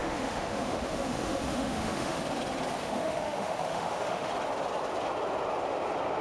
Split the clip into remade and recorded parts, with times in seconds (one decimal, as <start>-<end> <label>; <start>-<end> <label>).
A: 0.0-2.2 remade; 2.2-2.8 recorded; 2.8-4.3 remade; 4.3-6.2 recorded